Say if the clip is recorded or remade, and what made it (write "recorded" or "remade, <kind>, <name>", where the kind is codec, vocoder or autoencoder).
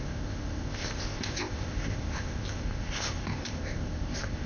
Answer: remade, codec, ZipCodec